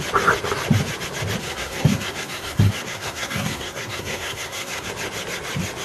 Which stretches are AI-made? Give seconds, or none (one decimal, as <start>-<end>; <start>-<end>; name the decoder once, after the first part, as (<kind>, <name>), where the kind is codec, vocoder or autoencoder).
1.4-4.9 (codec, SNAC)